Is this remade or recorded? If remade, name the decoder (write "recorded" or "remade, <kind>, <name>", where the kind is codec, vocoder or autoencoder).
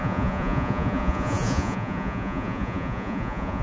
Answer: remade, vocoder, Vocos